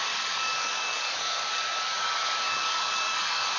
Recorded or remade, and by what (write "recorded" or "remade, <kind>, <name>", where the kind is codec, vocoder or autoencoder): remade, codec, DAC